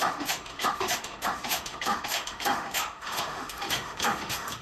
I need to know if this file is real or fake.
fake